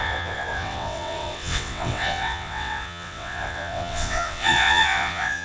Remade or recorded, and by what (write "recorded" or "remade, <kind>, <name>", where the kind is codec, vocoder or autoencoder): remade, vocoder, WaveNeXt